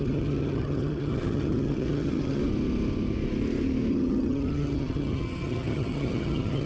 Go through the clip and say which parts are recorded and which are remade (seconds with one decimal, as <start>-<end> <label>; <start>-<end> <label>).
0.0-2.4 remade; 2.4-3.9 recorded; 3.9-6.7 remade